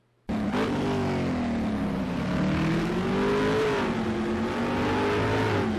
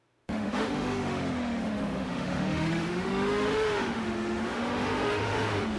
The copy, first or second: second